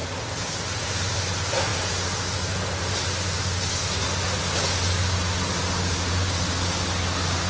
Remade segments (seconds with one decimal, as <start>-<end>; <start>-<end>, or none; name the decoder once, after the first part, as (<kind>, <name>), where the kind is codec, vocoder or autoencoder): none